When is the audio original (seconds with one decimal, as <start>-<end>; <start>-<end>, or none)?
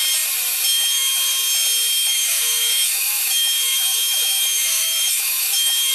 0.0-0.7; 1.3-2.1